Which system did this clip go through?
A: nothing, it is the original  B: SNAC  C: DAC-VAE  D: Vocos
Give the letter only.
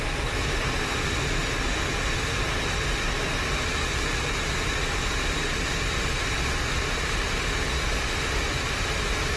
A